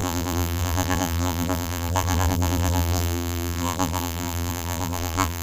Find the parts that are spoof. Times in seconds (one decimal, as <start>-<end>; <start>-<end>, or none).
0.0-5.4